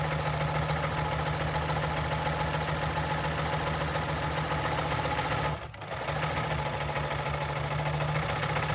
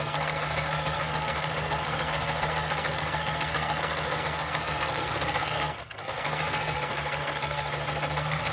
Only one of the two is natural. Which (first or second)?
first